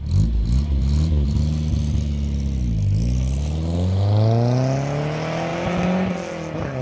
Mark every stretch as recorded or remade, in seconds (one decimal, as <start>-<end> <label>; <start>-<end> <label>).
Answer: 0.0-6.8 recorded